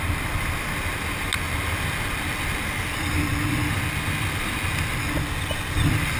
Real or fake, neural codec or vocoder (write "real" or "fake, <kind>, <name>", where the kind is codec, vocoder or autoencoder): real